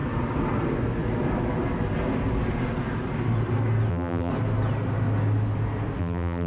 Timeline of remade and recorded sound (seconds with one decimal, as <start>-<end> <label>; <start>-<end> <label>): 0.0-3.9 recorded; 3.9-4.3 remade; 4.3-6.0 recorded; 6.0-6.5 remade